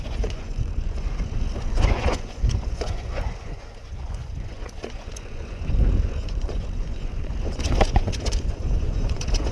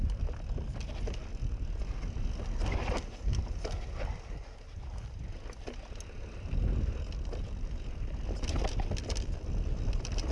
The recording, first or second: second